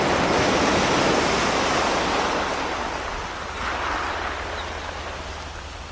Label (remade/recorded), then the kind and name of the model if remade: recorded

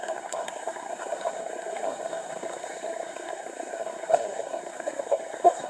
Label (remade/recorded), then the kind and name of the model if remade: remade, codec, SNAC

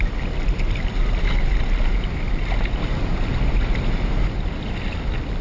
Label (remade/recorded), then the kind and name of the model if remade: recorded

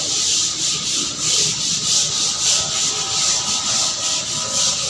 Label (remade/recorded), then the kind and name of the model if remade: recorded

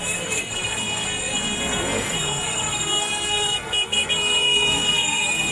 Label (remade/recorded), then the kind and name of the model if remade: remade, codec, SNAC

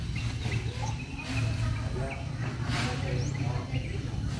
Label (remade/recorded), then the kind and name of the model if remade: recorded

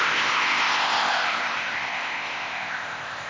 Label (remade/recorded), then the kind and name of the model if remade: remade, codec, ZipCodec